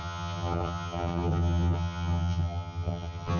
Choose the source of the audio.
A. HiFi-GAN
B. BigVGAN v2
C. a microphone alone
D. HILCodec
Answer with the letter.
A